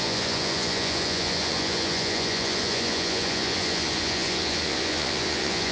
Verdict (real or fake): fake